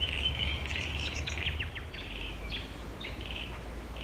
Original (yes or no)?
no